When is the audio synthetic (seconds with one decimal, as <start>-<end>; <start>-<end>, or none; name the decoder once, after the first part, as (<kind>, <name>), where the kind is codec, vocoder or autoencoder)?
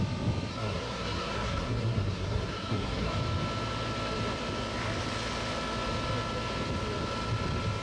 0.5-3.1 (codec, SNAC)